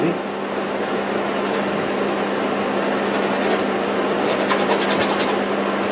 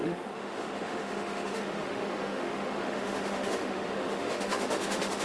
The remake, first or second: second